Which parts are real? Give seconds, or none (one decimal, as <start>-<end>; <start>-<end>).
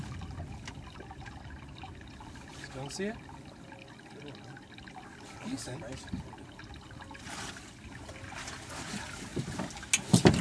0.0-10.4